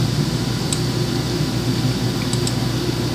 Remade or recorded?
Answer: recorded